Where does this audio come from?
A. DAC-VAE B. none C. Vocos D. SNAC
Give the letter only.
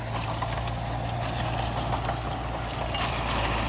B